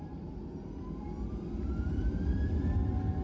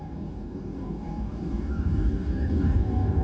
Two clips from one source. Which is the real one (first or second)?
first